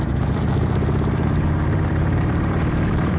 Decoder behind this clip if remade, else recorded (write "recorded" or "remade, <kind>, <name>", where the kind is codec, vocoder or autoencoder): remade, vocoder, BigVGAN v2